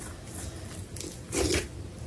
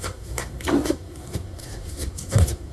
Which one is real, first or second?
first